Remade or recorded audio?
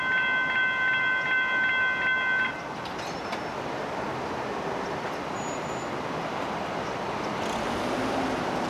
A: recorded